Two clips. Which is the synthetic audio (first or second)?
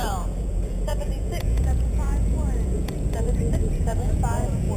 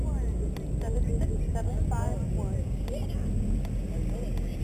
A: first